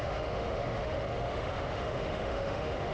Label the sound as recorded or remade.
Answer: remade